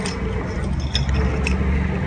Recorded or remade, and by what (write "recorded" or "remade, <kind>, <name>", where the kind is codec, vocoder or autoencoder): recorded